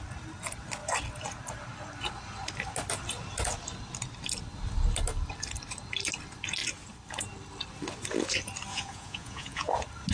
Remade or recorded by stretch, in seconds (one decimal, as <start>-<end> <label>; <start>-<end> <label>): 0.0-8.7 recorded; 8.7-9.7 remade; 9.7-10.1 recorded